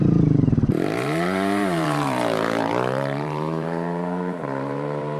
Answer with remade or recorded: remade